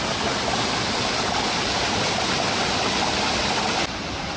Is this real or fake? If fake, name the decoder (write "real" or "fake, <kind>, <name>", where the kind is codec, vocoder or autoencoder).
real